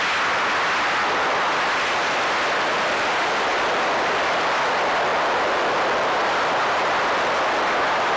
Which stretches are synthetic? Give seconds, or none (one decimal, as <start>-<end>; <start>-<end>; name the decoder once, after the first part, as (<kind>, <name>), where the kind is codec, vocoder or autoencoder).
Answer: none